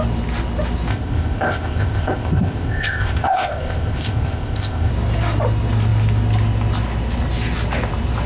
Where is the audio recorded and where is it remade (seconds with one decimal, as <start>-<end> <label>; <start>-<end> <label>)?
0.0-0.9 recorded; 0.9-4.9 remade; 4.9-8.3 recorded